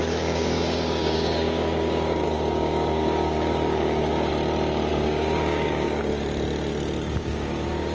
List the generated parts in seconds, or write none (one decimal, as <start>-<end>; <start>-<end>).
0.0-4.3; 4.9-6.1; 7.1-7.9

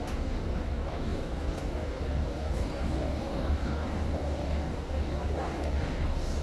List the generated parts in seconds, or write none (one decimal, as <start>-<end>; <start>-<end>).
0.0-6.4